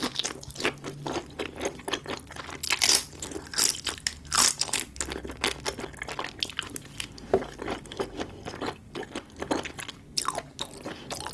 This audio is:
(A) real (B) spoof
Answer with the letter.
A